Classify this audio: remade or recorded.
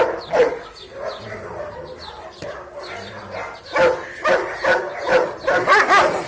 recorded